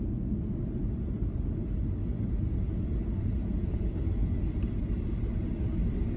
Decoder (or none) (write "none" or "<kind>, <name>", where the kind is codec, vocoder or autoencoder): none